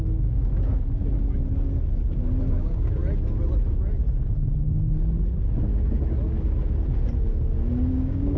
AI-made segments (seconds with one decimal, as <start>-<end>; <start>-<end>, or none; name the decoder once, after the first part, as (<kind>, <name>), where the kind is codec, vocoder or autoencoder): 0.0-0.5 (codec, DAC); 2.5-3.0; 7.9-8.4